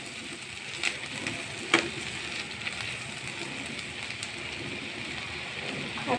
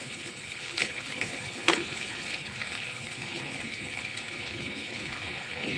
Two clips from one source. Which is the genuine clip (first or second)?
first